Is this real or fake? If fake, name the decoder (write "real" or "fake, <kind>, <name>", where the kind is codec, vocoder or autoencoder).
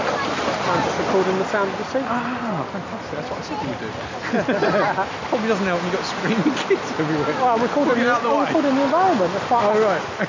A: real